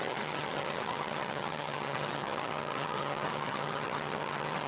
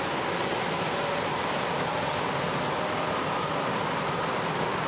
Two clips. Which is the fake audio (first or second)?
first